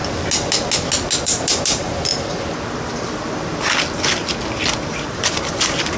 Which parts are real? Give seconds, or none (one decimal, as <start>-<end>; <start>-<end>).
0.0-1.2; 2.1-4.9